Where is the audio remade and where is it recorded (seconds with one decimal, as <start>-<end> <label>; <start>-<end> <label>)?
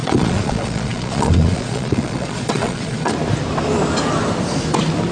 0.0-3.1 remade; 3.1-5.1 recorded